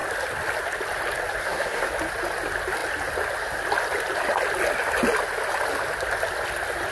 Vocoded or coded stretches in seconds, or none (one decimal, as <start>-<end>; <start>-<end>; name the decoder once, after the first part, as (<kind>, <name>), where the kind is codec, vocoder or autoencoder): 1.4-1.9 (codec, SNAC)